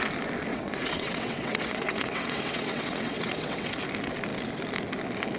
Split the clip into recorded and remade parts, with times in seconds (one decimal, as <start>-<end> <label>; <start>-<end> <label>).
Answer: 0.0-0.5 recorded; 0.5-3.7 remade; 3.7-5.4 recorded